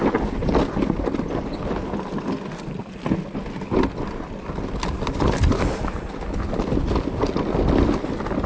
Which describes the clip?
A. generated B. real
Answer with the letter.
B